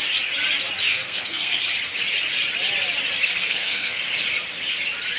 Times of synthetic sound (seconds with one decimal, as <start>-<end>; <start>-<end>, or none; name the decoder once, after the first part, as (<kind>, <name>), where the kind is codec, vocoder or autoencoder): 0.9-1.6 (codec, SNAC); 3.4-4.0